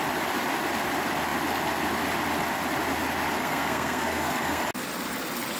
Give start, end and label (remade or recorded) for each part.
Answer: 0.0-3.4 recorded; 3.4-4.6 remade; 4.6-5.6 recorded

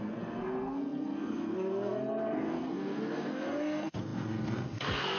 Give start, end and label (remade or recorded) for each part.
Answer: 0.0-5.2 remade

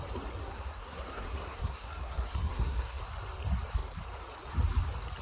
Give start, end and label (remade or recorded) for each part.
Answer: 0.0-0.4 recorded; 0.4-3.0 remade; 3.0-5.2 recorded

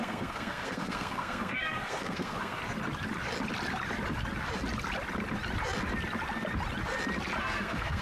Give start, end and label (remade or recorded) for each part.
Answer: 0.0-2.6 remade; 2.6-7.4 recorded; 7.4-8.0 remade

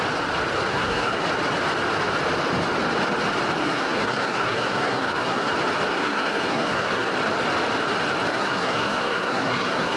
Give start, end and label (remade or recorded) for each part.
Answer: 0.0-0.7 recorded; 0.7-1.2 remade; 1.2-3.6 recorded; 3.6-5.5 remade; 5.5-5.9 recorded; 5.9-7.1 remade; 7.1-8.3 recorded; 8.3-10.0 remade

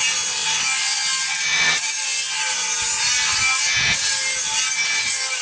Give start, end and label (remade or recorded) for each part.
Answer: 0.0-5.4 recorded

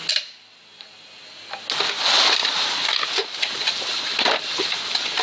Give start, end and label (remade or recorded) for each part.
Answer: 0.0-5.2 recorded